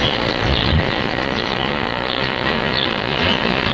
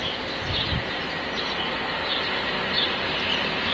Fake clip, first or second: first